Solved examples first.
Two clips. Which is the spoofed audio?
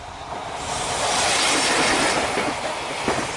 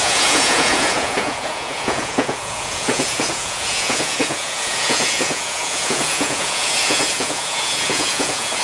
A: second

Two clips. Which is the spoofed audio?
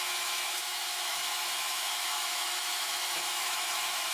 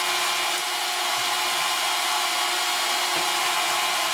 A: first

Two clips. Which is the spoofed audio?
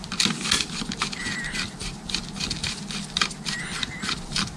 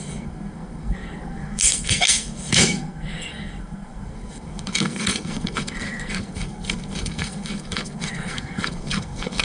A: second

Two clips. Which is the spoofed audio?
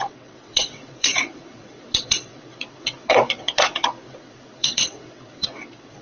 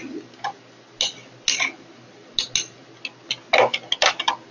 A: first